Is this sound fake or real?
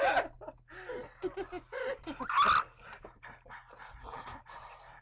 real